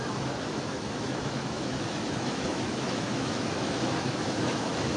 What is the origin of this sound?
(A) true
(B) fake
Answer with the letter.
B